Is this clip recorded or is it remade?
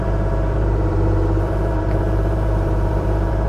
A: remade